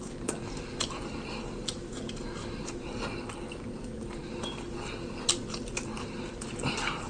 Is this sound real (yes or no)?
yes